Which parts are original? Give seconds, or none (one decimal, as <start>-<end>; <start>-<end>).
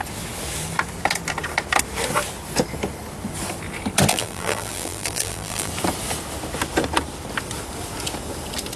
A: 0.0-4.1; 5.7-8.8